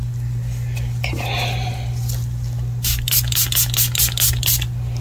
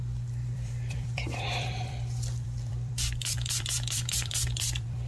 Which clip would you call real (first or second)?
first